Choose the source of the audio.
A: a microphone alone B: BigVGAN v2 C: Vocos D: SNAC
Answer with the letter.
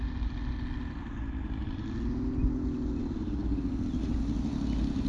A